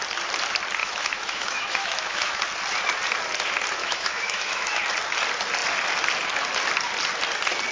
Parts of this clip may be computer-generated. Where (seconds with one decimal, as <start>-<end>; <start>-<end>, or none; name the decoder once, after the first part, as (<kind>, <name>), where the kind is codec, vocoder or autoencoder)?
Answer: 0.8-2.4 (autoencoder, DAC-VAE); 3.8-4.8